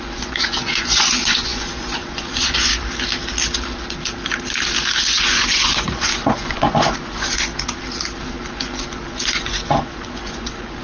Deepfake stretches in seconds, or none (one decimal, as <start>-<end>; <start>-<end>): 0.0-2.7; 5.2-7.5; 8.2-10.8